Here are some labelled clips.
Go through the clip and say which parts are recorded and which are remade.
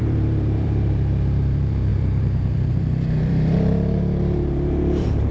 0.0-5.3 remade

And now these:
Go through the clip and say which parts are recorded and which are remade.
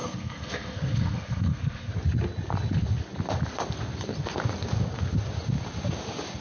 0.0-1.9 remade; 1.9-6.4 recorded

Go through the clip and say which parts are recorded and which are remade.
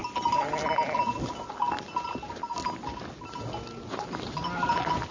0.0-5.1 recorded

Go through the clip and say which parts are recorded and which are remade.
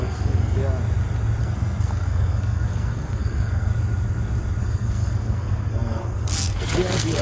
0.0-0.6 remade; 0.6-1.4 recorded; 1.4-3.7 remade; 3.7-4.6 recorded; 4.6-7.2 remade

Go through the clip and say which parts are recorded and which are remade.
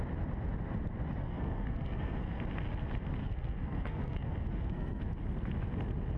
0.0-1.2 recorded; 1.2-2.4 remade; 2.4-3.2 recorded; 3.2-5.0 remade; 5.0-6.2 recorded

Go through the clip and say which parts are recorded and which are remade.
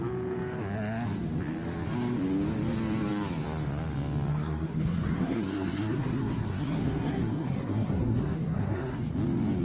0.0-4.3 recorded; 4.3-9.0 remade; 9.0-9.6 recorded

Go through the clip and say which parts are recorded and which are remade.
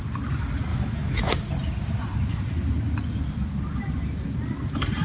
0.0-0.7 recorded; 0.7-1.3 remade; 1.3-5.0 recorded